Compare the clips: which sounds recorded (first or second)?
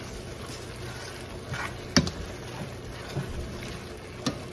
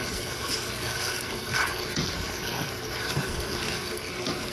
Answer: first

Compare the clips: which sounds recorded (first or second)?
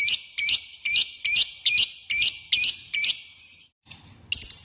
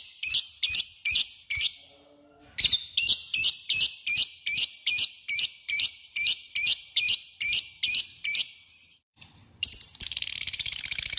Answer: first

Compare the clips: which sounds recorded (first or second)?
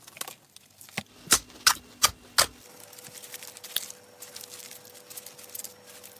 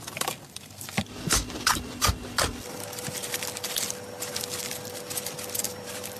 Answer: first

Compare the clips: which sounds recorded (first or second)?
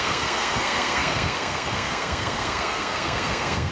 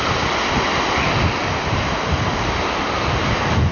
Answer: second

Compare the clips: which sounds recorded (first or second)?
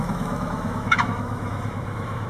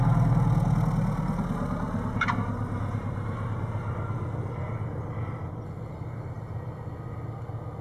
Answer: second